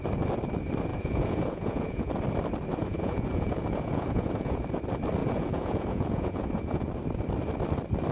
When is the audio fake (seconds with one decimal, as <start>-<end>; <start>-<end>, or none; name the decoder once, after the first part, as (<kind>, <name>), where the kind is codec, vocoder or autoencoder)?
0.9-2.1 (vocoder, Vocos); 2.8-4.6; 5.2-6.9